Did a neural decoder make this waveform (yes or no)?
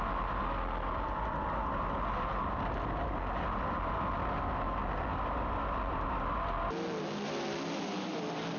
no